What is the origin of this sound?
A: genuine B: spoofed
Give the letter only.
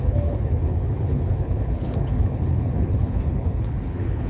B